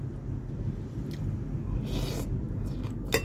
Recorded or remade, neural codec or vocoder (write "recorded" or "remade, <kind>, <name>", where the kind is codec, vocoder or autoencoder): recorded